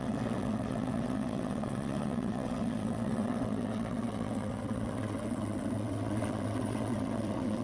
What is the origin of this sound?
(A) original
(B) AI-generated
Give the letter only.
B